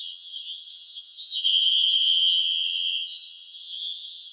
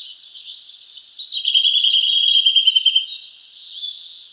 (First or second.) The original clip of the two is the second